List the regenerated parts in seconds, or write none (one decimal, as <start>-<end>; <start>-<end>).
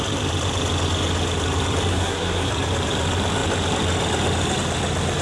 1.9-2.5